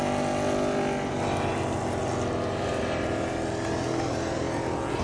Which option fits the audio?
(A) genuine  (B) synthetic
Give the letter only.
A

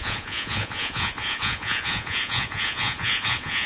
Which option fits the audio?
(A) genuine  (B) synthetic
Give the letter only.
B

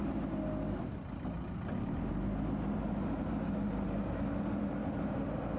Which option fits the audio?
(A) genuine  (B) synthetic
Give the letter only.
A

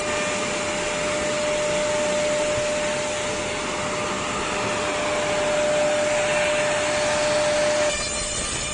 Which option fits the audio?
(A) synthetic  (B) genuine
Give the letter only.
B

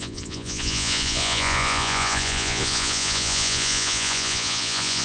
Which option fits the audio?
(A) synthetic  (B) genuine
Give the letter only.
A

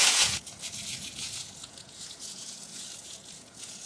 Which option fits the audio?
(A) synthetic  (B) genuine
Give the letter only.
A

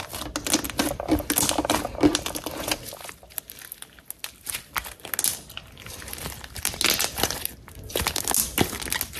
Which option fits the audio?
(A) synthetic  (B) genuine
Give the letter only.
B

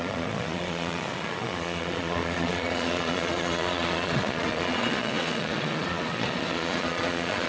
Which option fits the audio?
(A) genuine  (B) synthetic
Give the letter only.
B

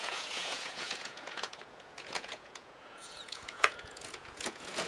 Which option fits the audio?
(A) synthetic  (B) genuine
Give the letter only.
A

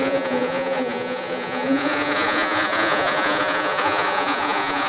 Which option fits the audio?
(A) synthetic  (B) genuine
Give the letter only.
A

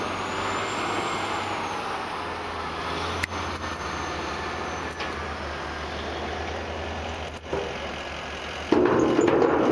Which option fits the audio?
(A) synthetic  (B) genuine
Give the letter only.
B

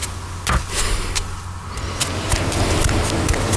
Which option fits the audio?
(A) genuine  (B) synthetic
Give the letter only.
A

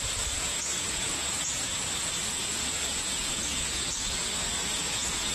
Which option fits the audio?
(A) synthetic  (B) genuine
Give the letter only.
A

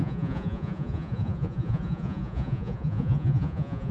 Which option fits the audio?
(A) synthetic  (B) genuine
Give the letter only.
A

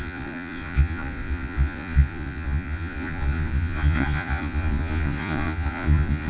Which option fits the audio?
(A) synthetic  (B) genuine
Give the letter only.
A